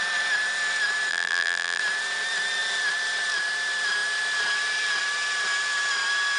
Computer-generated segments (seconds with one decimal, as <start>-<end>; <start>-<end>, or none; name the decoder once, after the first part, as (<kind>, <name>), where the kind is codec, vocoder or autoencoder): 1.1-1.8 (vocoder, BigVGAN v2)